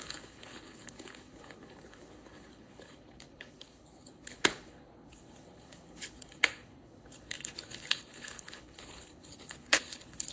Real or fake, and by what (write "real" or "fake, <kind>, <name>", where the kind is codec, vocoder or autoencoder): fake, codec, HILCodec